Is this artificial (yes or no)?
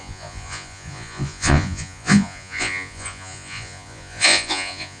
yes